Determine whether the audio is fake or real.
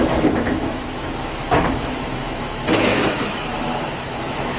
fake